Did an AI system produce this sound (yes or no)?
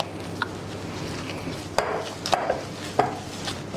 no